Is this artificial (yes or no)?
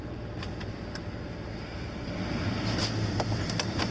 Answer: no